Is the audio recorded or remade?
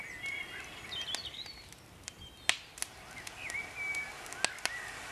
recorded